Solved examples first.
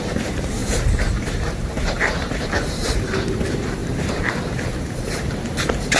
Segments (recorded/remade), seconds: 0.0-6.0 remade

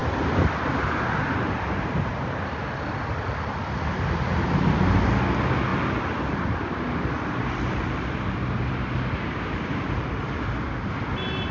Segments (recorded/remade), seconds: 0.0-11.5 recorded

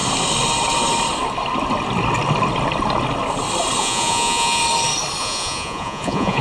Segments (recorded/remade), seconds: 0.0-3.8 recorded; 3.8-4.6 remade; 4.6-5.2 recorded; 5.2-6.4 remade

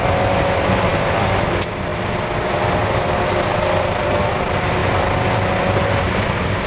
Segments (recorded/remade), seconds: 0.0-4.8 remade; 4.8-5.8 recorded; 5.8-6.7 remade